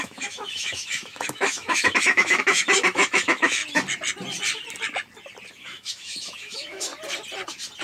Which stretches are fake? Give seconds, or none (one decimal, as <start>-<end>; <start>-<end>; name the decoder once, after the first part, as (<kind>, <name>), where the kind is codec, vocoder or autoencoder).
0.0-3.6 (autoencoder, DAC-VAE); 5.5-6.9